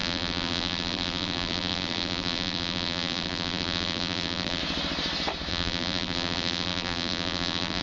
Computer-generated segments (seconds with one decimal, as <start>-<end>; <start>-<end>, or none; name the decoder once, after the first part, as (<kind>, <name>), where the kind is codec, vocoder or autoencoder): 0.0-4.6 (vocoder, BigVGAN v2); 5.5-7.8

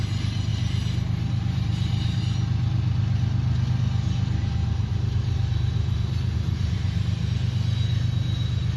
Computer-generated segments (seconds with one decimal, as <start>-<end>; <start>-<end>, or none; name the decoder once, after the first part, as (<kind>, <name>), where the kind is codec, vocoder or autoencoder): 0.5-2.2 (vocoder, BigVGAN v2); 4.4-7.2

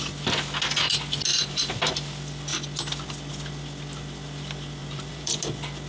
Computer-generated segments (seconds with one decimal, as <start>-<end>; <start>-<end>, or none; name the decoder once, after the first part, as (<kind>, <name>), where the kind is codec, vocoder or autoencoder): 1.3-1.9 (vocoder, BigVGAN v2); 4.8-5.4

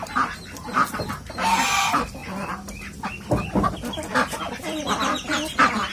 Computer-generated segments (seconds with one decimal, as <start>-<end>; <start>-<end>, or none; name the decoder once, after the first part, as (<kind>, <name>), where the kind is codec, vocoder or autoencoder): 0.0-2.2 (vocoder, BigVGAN v2); 3.6-5.9

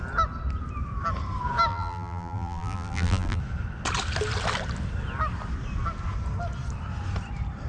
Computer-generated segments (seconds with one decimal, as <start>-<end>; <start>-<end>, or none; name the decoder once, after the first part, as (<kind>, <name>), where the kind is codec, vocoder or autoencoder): 1.7-3.4 (vocoder, BigVGAN v2)

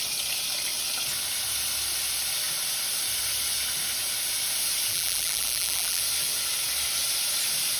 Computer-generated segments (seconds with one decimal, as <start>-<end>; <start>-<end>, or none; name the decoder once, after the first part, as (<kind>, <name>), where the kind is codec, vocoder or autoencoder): 4.9-6.0 (vocoder, BigVGAN v2)